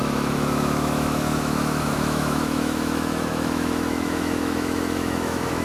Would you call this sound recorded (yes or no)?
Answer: no